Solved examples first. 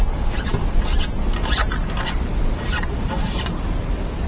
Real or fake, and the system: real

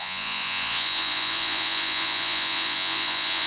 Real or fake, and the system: fake, vocoder, Vocos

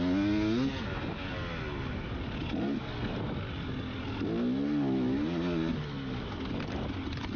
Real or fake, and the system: real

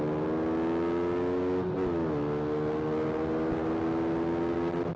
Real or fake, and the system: real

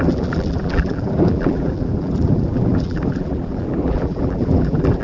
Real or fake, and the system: fake, vocoder, BigVGAN v2